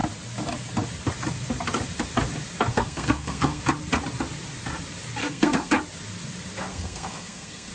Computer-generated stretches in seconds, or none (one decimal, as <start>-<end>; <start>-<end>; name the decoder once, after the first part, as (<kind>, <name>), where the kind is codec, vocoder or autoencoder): 2.7-3.6 (codec, SNAC); 5.2-5.7; 6.7-7.7